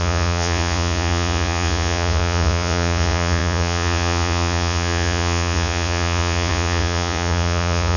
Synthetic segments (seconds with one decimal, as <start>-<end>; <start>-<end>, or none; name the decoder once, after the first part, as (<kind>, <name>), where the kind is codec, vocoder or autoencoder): 0.0-8.0 (vocoder, Vocos)